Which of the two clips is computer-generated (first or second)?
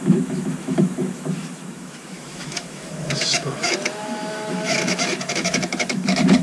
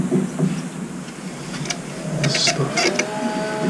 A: first